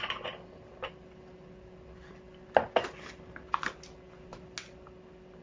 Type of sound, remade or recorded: recorded